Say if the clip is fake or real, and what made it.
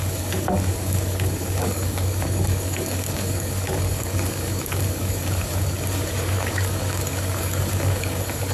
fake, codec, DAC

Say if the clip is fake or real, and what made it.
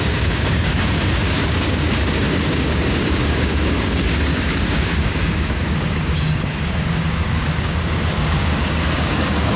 fake, codec, DAC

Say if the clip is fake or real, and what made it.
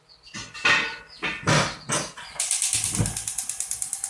real